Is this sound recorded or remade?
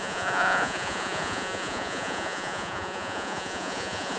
remade